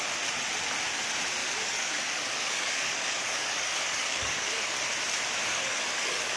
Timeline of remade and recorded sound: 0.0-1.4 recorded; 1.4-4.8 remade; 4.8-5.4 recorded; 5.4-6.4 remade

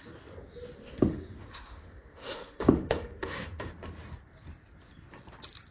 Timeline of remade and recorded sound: 0.0-0.8 recorded; 0.8-3.7 remade; 3.7-5.7 recorded